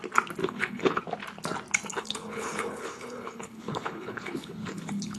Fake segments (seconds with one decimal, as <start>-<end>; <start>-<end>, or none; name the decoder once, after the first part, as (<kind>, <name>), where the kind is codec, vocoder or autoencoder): 0.4-1.0 (codec, HILCodec); 1.9-5.2